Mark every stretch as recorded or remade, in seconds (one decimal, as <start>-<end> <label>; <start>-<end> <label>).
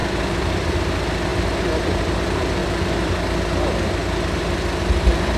0.0-0.8 remade; 0.8-5.4 recorded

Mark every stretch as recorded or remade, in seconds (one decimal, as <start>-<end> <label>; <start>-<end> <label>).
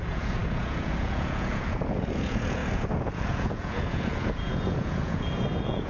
0.0-5.9 remade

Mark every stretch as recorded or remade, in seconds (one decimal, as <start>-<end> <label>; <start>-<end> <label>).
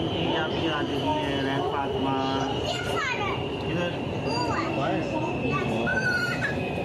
0.0-6.8 recorded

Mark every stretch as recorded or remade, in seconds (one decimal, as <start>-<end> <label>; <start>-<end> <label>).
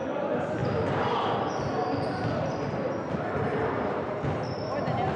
0.0-5.2 recorded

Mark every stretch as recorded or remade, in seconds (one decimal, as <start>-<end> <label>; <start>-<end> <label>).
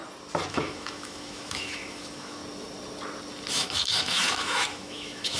0.0-0.5 recorded; 0.5-2.4 remade; 2.4-3.5 recorded; 3.5-5.4 remade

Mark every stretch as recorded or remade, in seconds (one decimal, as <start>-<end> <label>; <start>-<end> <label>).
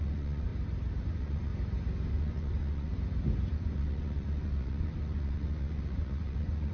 0.0-0.5 remade; 0.5-1.0 recorded; 1.0-1.5 remade; 1.5-2.1 recorded; 2.1-2.9 remade; 2.9-3.5 recorded; 3.5-6.7 remade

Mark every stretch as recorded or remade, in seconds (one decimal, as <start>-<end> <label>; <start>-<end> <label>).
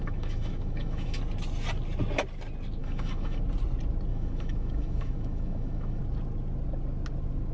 0.0-1.2 remade; 1.2-2.8 recorded; 2.8-3.4 remade; 3.4-4.1 recorded; 4.1-6.0 remade; 6.0-7.5 recorded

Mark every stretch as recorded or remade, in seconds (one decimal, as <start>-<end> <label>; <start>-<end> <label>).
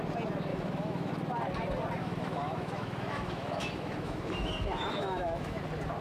0.0-0.5 recorded; 0.5-1.1 remade; 1.1-2.0 recorded; 2.0-5.6 remade; 5.6-6.0 recorded